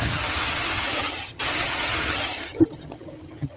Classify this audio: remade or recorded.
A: remade